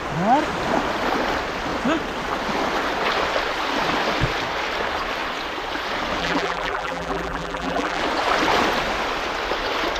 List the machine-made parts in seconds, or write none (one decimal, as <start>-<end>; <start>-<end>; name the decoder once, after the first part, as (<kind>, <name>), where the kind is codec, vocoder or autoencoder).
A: 6.2-8.0 (vocoder, BigVGAN v2)